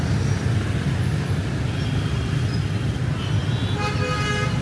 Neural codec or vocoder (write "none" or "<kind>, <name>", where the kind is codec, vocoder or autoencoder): none